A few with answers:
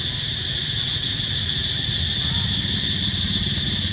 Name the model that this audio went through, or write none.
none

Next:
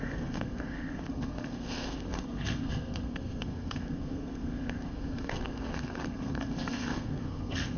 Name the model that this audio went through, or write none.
codec, SNAC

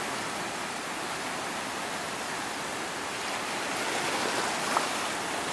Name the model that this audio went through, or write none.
none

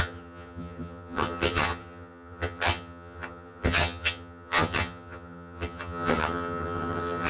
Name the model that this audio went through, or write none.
vocoder, HiFi-GAN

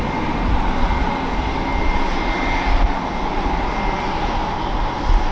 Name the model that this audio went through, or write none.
none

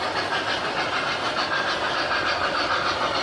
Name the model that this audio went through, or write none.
none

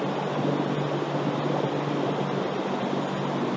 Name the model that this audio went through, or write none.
none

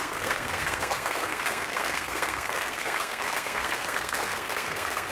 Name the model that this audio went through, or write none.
codec, SNAC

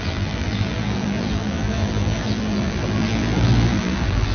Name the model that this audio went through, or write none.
vocoder, BigVGAN v2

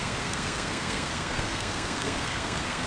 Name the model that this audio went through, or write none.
codec, SNAC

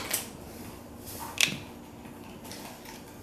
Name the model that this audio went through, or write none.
none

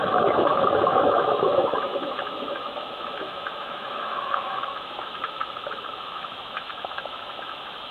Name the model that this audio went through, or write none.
autoencoder, DAC-VAE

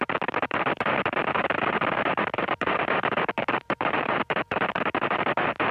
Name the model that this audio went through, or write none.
vocoder, BigVGAN v2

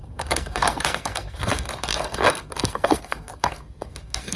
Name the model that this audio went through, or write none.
codec, SNAC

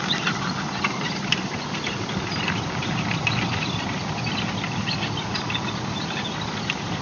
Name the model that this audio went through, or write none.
none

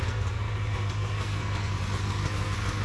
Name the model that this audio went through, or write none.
codec, SNAC